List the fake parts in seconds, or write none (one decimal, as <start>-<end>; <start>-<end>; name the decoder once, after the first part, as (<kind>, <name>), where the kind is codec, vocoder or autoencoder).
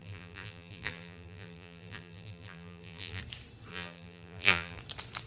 0.0-3.2 (vocoder, BigVGAN v2); 3.7-4.8